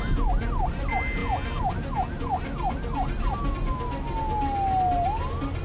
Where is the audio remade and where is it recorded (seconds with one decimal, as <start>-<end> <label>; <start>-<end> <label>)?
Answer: 0.0-5.6 recorded